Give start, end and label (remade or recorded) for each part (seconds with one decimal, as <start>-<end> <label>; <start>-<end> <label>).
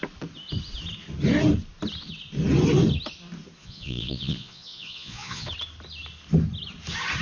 0.0-3.6 recorded; 3.6-5.5 remade; 5.5-7.2 recorded